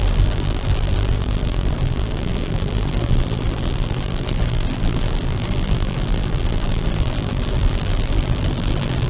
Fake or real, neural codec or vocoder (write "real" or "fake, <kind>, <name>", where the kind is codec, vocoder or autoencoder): fake, vocoder, BigVGAN v2